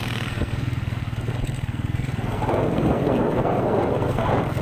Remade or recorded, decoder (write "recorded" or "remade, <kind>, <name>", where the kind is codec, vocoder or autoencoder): remade, codec, SNAC